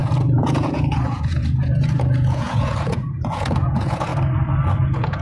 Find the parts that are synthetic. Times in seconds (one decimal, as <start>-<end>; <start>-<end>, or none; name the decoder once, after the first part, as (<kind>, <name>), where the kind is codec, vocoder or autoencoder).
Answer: 0.0-4.1 (vocoder, Vocos); 4.8-5.2